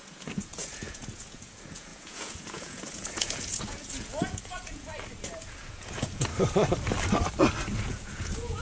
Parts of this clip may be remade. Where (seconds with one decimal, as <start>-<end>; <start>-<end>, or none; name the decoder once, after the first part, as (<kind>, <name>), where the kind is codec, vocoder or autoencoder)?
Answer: 0.0-4.9 (vocoder, Vocos); 5.4-6.3; 7.8-8.6